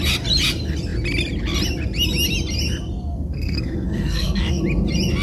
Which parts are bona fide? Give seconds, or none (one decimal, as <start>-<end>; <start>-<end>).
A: 0.0-3.1; 4.6-5.2